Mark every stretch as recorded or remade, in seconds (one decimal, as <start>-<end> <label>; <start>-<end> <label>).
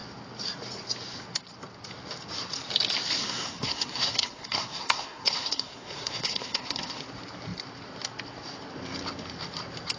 0.0-3.2 recorded; 3.2-7.0 remade; 7.0-10.0 recorded